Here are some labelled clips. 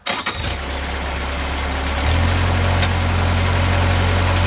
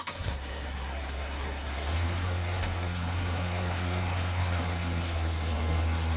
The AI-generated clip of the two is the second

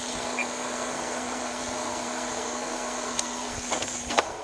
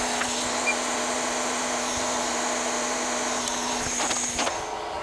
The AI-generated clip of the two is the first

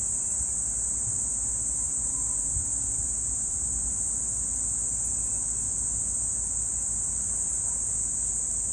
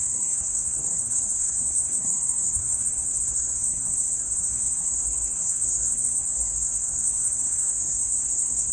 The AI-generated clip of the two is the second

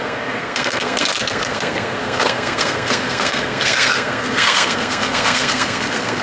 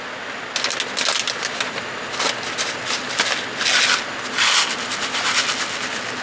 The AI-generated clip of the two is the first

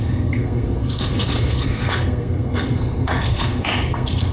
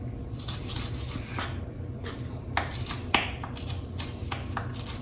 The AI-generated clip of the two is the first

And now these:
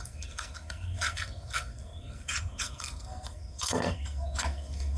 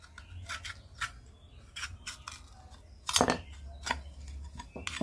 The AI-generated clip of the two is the first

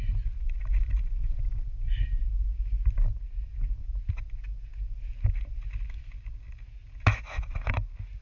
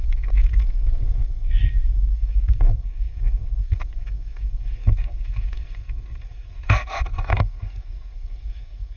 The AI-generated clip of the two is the second